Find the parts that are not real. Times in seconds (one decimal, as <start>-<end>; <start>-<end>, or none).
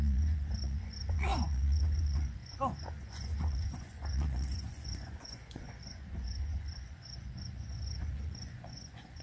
0.0-9.2